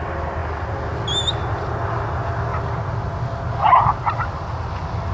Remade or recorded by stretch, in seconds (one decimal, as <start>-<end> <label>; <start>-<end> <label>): 0.0-5.1 recorded